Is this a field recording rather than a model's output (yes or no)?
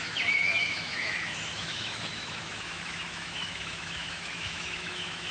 no